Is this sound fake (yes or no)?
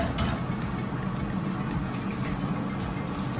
no